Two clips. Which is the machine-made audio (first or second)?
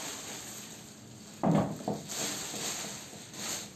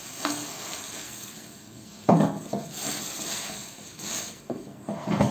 second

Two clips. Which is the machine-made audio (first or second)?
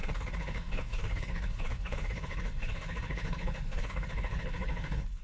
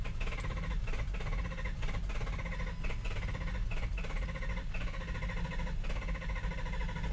first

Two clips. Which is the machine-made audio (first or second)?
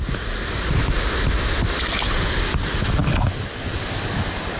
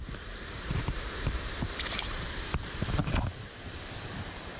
second